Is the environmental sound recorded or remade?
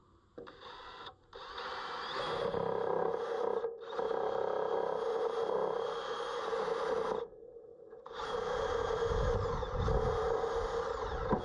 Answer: recorded